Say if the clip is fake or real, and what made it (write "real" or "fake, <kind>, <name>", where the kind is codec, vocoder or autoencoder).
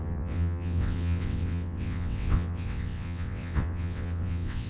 fake, vocoder, WaveNeXt